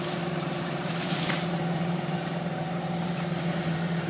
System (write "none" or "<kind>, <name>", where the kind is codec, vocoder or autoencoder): vocoder, BigVGAN v2